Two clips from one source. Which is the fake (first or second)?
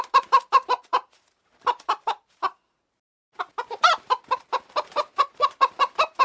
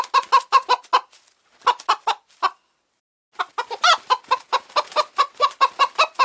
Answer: first